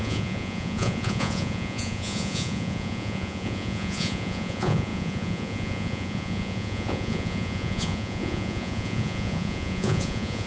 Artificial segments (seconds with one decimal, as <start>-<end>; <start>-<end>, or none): 0.0-10.5